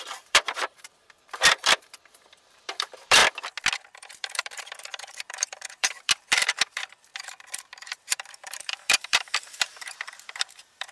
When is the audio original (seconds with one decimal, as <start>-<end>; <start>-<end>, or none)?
3.2-4.1